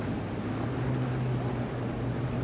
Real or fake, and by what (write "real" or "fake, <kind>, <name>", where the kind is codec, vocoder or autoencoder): real